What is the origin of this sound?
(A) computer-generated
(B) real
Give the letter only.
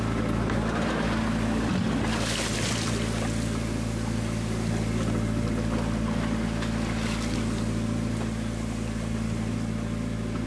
B